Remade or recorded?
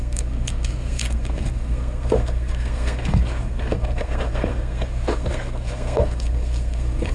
remade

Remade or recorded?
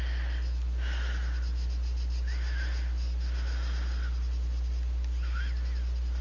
recorded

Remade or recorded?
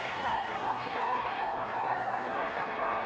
remade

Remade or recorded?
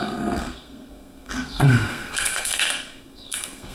remade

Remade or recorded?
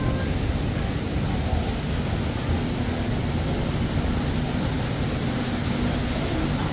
recorded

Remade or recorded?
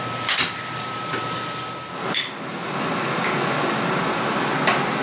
recorded